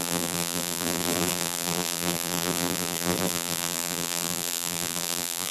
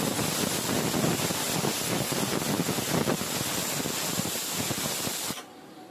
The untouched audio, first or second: second